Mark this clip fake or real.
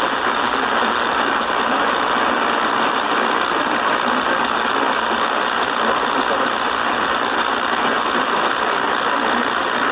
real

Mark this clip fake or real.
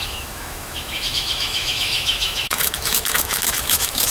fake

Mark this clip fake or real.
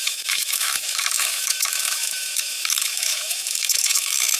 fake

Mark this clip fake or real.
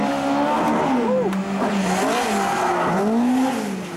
real